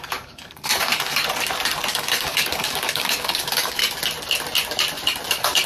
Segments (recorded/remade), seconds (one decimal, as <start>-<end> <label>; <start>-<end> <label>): 0.0-1.2 remade; 1.2-1.9 recorded; 1.9-3.8 remade; 3.8-5.3 recorded; 5.3-5.7 remade